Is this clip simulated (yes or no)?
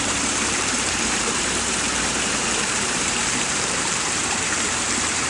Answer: yes